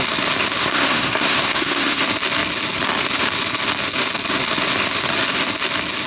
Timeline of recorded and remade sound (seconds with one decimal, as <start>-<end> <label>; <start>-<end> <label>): 0.0-0.6 recorded; 0.6-2.0 remade; 2.0-6.1 recorded

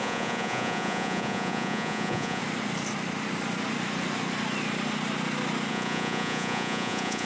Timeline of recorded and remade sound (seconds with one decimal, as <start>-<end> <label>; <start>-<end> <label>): 0.0-2.4 remade; 2.4-5.7 recorded; 5.7-7.3 remade

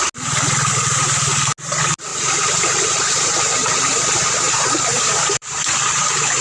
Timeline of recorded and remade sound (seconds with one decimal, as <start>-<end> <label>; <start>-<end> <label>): 0.0-2.1 recorded; 2.1-5.7 remade; 5.7-6.4 recorded

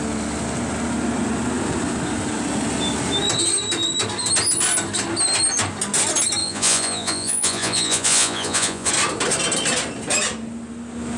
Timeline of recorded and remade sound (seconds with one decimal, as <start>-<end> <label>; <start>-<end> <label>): 0.0-6.4 recorded; 6.4-8.9 remade; 8.9-11.2 recorded

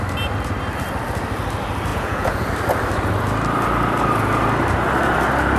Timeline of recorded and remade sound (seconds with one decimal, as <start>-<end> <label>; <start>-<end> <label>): 0.0-1.9 recorded; 1.9-2.5 remade; 2.5-5.6 recorded